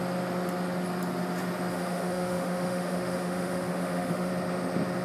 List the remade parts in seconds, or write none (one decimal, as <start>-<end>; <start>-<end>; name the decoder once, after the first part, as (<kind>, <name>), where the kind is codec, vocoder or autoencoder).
1.7-4.3 (autoencoder, DAC-VAE)